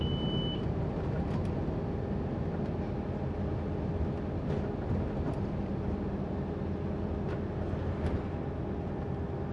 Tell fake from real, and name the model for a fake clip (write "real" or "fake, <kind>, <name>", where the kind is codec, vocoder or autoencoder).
real